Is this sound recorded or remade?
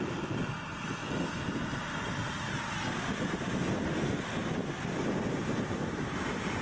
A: recorded